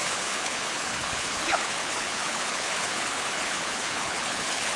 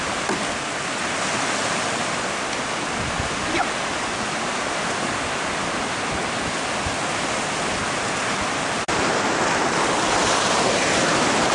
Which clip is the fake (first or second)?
first